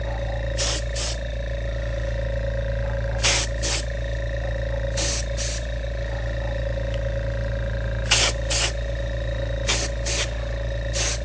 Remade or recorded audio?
recorded